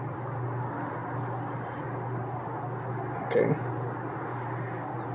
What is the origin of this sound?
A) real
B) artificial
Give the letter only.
A